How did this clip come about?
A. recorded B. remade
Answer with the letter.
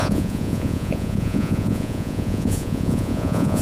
B